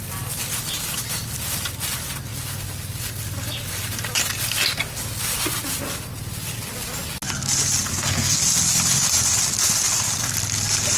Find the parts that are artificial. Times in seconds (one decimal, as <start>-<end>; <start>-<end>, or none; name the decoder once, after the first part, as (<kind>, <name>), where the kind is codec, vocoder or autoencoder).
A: 7.9-8.4 (codec, SNAC)